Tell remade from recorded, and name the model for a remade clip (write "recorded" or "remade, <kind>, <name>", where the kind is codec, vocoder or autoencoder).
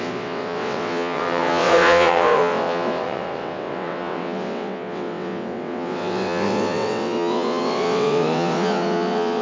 remade, vocoder, WaveNeXt